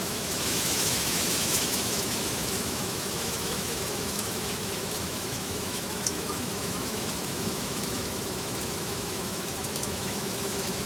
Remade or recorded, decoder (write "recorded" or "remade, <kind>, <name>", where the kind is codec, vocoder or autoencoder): remade, autoencoder, DAC-VAE